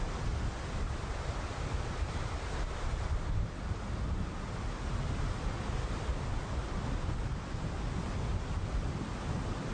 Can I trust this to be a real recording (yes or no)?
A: yes